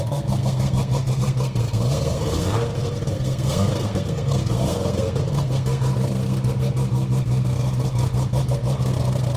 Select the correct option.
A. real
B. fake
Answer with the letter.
B